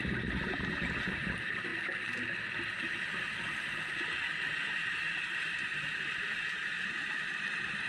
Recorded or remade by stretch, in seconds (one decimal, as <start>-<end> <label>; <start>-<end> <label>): 0.0-1.7 remade; 1.7-4.3 recorded; 4.3-7.9 remade